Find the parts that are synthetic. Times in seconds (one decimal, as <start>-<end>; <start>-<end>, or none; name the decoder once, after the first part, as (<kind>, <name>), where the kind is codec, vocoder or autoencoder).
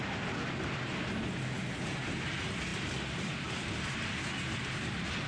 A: none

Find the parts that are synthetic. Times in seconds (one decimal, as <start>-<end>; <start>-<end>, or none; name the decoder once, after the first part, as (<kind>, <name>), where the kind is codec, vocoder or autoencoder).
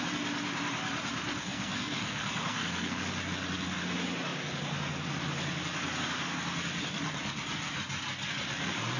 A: 1.4-3.0 (codec, SNAC)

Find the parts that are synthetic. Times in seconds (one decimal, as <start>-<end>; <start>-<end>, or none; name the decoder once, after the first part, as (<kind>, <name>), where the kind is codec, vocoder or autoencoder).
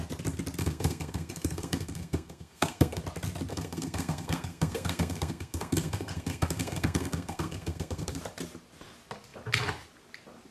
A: 0.6-3.0 (codec, SNAC); 3.5-8.2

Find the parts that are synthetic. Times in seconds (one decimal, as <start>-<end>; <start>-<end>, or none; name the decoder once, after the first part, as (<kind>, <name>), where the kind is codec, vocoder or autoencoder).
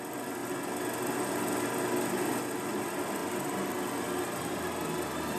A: none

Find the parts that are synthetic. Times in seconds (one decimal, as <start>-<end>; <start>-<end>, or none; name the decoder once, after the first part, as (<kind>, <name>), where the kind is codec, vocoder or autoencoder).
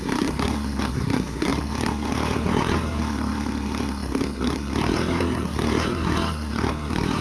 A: 0.0-7.2 (codec, SNAC)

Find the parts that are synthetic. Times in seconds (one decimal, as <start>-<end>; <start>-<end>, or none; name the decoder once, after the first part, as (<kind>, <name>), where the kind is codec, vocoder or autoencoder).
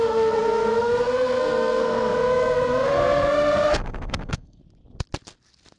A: 0.0-4.6 (codec, SNAC)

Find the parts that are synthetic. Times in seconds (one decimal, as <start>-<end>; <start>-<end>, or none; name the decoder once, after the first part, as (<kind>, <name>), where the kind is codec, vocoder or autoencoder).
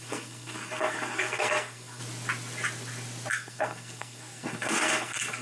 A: 0.0-2.0 (codec, SNAC); 3.3-5.4